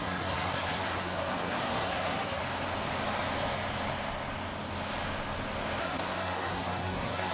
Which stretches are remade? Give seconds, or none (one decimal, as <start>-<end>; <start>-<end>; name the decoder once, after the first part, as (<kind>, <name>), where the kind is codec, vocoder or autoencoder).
0.0-2.4 (codec, SNAC); 5.8-7.3

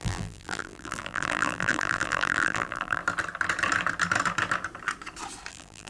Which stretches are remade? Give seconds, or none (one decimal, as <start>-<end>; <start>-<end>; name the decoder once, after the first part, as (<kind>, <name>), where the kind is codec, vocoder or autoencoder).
0.0-3.0 (vocoder, BigVGAN v2); 5.5-5.9

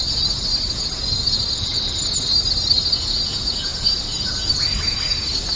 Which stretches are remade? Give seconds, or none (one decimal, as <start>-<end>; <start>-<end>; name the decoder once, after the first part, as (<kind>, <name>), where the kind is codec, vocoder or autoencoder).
none

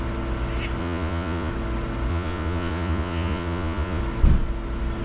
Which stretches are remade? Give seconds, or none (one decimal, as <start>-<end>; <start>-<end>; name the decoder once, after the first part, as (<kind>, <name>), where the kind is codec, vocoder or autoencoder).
0.8-1.5 (vocoder, Vocos); 2.1-4.0

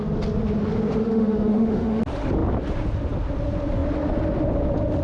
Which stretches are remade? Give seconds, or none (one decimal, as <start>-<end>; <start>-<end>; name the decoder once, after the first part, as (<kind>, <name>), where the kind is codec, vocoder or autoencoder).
1.0-2.0 (autoencoder, DAC-VAE)

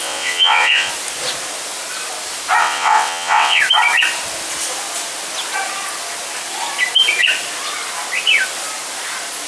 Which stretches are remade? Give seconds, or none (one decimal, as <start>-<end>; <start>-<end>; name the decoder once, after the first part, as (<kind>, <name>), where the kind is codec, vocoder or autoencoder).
0.0-0.9 (vocoder, WaveNeXt); 2.6-3.6

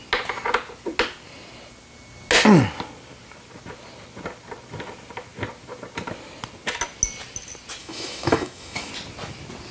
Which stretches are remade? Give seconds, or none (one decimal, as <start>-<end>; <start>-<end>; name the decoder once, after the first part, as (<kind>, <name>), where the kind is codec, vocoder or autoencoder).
7.8-8.9 (autoencoder, DAC-VAE)

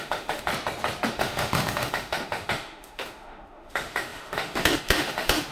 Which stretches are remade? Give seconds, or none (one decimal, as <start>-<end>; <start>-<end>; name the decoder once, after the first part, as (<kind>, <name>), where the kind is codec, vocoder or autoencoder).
0.0-0.5 (autoencoder, DAC-VAE); 1.1-5.5